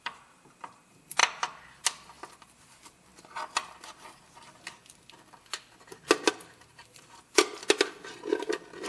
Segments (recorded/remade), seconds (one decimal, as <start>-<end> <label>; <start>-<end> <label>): 0.0-1.2 remade; 1.2-2.3 recorded; 2.3-3.1 remade; 3.1-6.3 recorded; 6.3-7.6 remade; 7.6-8.9 recorded